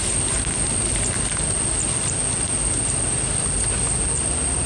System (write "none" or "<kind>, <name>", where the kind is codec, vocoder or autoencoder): none